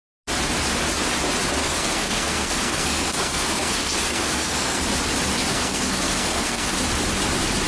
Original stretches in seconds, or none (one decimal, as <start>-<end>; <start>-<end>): 0.0-1.6; 4.8-5.5; 6.8-7.7